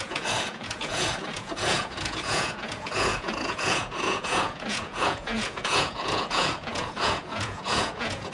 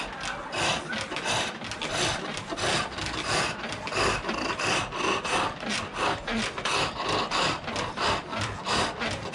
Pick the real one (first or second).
second